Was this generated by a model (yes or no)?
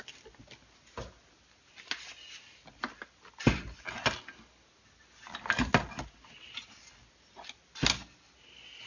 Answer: no